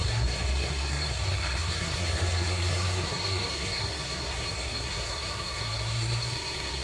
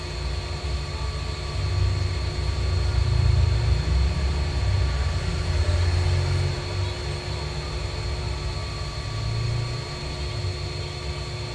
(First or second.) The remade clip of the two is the first